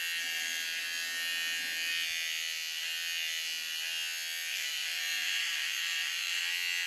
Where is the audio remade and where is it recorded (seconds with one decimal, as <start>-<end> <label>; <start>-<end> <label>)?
0.0-4.5 recorded; 4.5-6.4 remade; 6.4-6.9 recorded